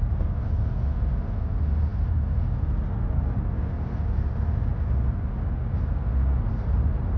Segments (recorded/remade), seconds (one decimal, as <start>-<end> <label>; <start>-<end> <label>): 0.0-7.2 recorded